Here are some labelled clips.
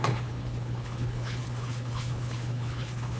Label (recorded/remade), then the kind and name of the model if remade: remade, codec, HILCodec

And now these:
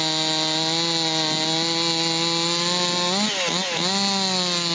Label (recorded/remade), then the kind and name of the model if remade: recorded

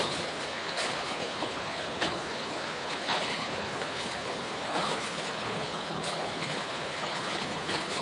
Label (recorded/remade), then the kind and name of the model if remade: remade, codec, HILCodec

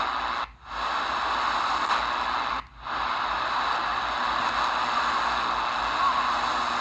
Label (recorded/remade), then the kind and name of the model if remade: recorded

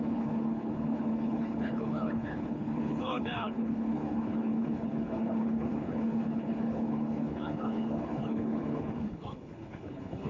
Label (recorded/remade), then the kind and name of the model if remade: remade, codec, HILCodec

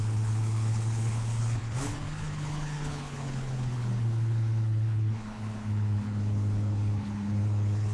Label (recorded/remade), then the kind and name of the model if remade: remade, codec, HILCodec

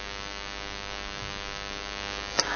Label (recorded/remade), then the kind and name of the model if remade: recorded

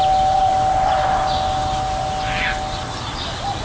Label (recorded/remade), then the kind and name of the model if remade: recorded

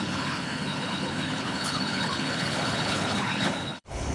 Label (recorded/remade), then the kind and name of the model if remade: remade, codec, HILCodec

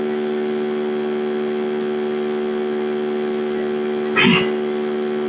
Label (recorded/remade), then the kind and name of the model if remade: recorded